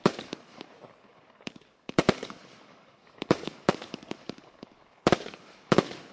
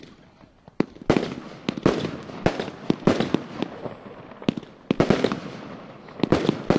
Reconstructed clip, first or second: first